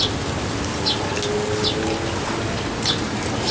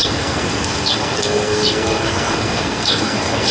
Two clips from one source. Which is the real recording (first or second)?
first